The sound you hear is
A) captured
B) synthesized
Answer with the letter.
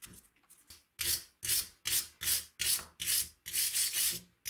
A